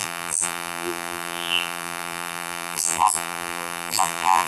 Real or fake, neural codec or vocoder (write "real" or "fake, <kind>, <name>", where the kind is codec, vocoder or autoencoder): fake, vocoder, BigVGAN v2